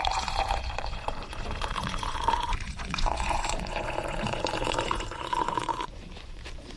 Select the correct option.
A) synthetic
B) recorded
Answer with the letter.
A